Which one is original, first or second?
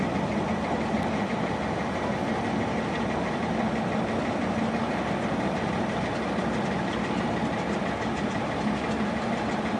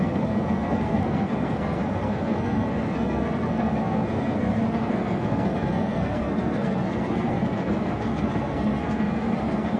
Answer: first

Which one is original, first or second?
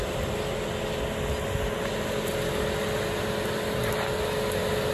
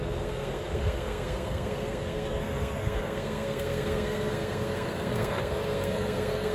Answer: first